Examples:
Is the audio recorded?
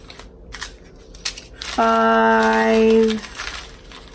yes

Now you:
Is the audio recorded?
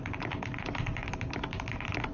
yes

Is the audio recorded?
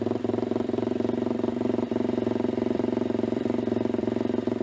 no